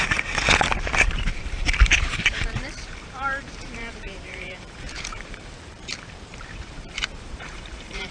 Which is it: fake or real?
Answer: fake